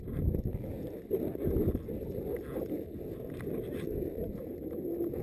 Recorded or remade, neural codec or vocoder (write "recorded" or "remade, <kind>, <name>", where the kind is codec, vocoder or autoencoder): recorded